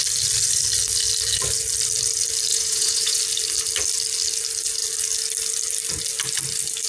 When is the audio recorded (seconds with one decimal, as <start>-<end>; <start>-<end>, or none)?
0.0-2.5; 3.2-6.9